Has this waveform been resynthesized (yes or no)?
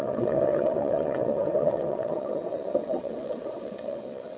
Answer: yes